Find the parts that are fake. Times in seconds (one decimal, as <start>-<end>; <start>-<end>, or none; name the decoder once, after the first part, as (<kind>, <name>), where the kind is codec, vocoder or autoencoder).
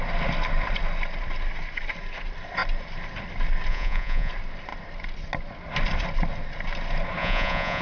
3.7-4.3 (vocoder, Vocos); 7.2-7.8